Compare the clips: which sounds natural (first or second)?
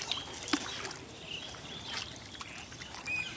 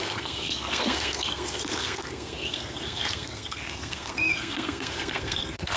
first